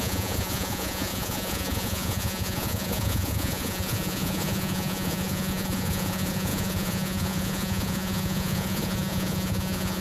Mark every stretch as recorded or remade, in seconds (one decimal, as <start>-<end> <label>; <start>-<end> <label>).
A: 0.0-10.0 remade